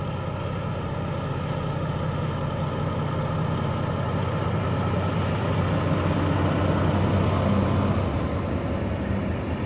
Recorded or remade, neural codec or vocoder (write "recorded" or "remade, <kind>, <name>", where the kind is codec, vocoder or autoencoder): recorded